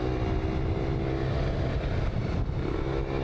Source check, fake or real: real